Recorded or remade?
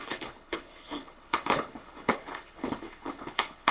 remade